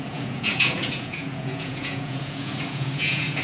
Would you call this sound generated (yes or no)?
yes